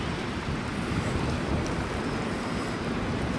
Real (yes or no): yes